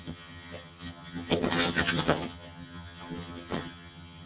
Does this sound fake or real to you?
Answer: fake